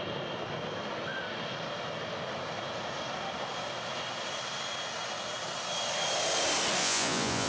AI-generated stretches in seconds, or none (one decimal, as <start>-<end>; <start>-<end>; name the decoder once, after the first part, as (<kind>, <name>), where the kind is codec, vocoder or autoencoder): 6.8-7.5 (vocoder, Vocos)